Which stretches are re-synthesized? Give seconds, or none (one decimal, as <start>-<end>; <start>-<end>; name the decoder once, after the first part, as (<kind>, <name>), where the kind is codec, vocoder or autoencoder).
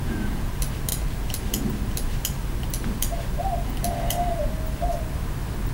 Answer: 0.0-0.5 (vocoder, Vocos)